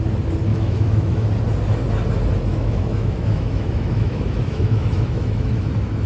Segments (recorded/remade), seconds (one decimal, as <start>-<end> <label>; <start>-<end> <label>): 0.0-0.5 recorded; 0.5-1.3 remade; 1.3-2.5 recorded; 2.5-6.1 remade